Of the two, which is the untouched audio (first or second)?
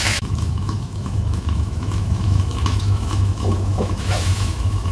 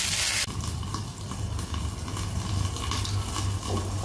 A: second